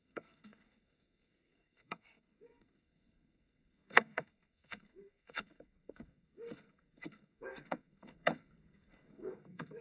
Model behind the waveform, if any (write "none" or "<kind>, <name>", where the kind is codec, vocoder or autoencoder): codec, SNAC